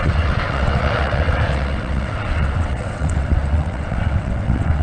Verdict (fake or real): fake